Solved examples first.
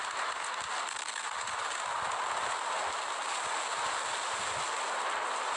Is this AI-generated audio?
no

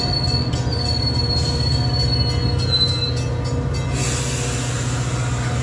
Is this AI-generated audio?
no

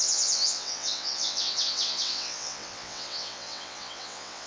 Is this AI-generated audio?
yes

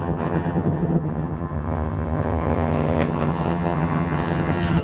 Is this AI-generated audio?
yes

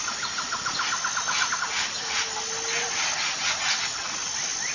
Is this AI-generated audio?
no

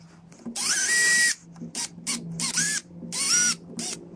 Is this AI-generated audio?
no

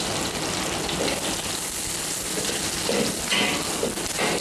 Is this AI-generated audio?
no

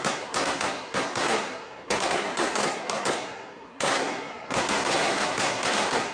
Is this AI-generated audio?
yes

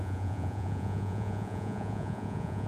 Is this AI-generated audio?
yes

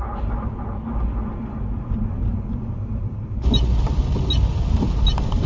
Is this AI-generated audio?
no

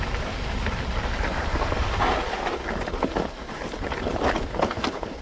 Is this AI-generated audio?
no